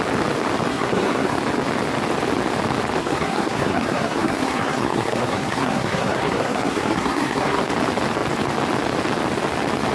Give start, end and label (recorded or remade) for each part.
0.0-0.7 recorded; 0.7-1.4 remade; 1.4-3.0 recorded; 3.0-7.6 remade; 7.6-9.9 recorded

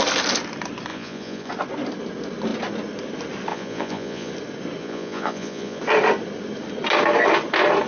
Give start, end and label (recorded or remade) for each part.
0.0-0.9 recorded; 0.9-1.5 remade; 1.5-3.5 recorded; 3.5-4.3 remade; 4.3-4.8 recorded; 4.8-5.8 remade; 5.8-7.9 recorded